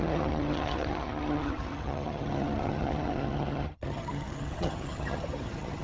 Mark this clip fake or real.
fake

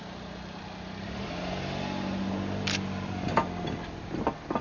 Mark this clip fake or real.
real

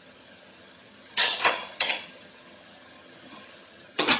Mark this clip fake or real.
fake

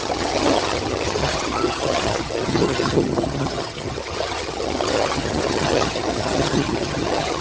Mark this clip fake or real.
fake